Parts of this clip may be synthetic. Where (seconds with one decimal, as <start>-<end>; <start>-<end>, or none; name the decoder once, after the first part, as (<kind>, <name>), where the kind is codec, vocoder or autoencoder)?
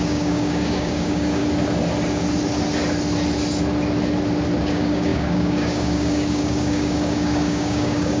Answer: 0.0-1.4 (codec, DAC); 4.6-8.2